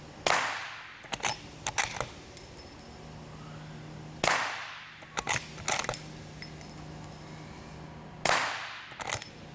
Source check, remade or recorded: recorded